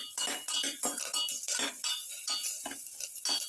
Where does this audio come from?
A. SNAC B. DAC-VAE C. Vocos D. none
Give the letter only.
D